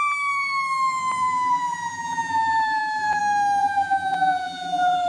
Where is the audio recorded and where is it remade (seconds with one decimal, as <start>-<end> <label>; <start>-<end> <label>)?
0.0-1.2 recorded; 1.2-3.2 remade; 3.2-3.6 recorded; 3.6-5.1 remade